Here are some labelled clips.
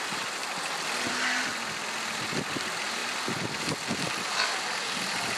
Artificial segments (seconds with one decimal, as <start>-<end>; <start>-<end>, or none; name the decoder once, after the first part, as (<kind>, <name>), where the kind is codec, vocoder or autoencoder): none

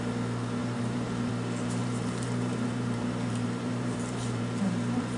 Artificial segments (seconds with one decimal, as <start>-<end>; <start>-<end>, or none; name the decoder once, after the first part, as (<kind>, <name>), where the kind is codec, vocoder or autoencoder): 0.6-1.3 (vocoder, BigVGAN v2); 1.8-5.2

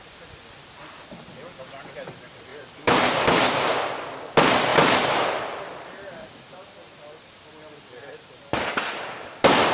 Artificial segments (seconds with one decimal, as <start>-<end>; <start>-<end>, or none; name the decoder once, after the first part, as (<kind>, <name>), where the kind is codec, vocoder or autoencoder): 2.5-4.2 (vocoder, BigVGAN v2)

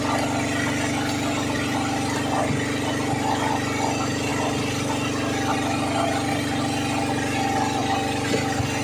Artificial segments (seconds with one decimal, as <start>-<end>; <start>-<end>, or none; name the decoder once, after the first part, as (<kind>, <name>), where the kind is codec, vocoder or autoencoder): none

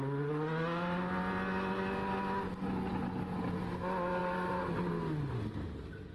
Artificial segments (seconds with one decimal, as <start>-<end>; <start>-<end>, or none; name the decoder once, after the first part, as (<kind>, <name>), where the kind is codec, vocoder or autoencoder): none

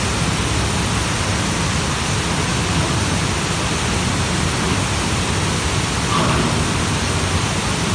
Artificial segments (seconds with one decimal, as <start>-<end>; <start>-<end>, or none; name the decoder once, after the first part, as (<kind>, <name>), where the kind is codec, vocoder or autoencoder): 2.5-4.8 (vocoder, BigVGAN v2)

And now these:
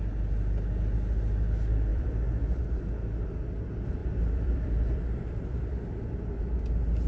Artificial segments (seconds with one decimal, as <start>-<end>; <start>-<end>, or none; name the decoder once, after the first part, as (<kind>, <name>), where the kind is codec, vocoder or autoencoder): 1.9-2.6 (vocoder, BigVGAN v2); 4.0-5.6